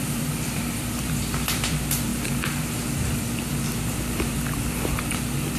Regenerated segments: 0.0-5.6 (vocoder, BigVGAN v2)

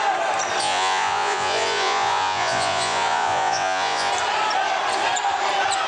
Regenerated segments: 0.6-4.1 (vocoder, Vocos)

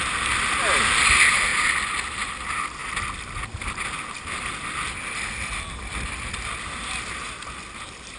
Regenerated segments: none